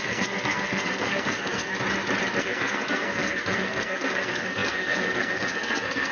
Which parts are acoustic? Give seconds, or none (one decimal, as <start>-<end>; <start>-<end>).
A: 1.7-2.4